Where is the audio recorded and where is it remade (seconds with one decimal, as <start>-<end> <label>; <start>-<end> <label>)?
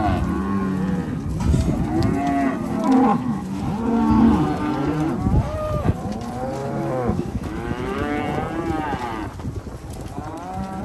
0.0-3.1 recorded; 3.1-3.6 remade; 3.6-6.6 recorded; 6.6-8.2 remade; 8.2-10.8 recorded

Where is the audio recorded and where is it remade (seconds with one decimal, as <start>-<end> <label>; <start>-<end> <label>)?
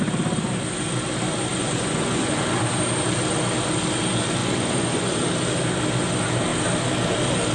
0.0-1.5 recorded; 1.5-2.4 remade; 2.4-4.4 recorded; 4.4-5.2 remade; 5.2-7.5 recorded